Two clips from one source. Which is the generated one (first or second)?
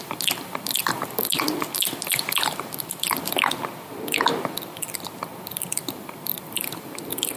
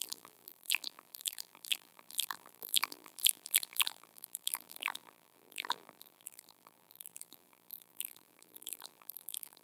second